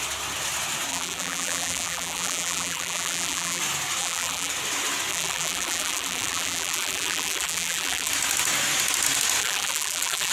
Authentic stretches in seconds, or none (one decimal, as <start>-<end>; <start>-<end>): 0.0-0.9; 3.6-4.0; 4.5-5.1; 8.1-9.4